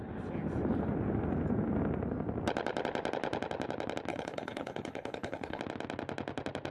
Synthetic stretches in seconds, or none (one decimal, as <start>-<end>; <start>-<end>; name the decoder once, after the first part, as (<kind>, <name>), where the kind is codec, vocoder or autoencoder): 4.1-5.6 (codec, HILCodec)